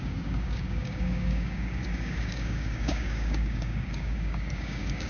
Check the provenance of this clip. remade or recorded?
remade